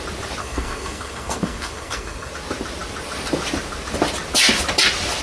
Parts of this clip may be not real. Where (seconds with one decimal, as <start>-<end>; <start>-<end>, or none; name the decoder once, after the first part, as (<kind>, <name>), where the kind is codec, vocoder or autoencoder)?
0.4-2.3 (codec, SNAC)

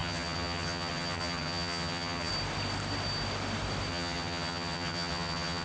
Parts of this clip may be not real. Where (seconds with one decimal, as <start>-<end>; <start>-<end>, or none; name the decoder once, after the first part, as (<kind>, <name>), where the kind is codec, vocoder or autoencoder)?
0.0-2.3 (vocoder, HiFi-GAN); 3.9-5.6

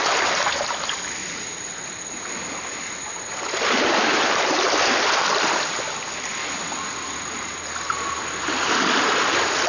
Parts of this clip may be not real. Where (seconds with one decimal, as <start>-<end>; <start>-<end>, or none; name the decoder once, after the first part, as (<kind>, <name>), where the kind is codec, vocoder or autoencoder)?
1.2-2.4 (vocoder, Vocos); 6.4-7.5

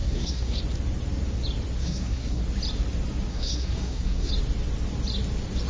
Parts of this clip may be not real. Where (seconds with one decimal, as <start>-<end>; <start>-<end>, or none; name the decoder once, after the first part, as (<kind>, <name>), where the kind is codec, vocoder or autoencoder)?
0.0-0.6 (codec, SNAC); 1.8-2.4; 3.3-4.3

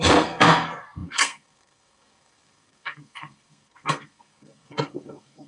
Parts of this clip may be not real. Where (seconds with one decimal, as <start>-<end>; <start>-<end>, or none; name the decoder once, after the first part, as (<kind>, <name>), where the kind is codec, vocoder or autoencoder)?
0.0-5.5 (codec, SNAC)

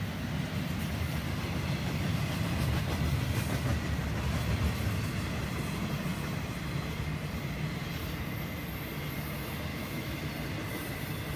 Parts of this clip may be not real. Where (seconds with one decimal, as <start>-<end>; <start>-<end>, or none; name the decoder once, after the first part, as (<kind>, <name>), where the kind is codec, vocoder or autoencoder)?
9.7-10.3 (autoencoder, DAC-VAE)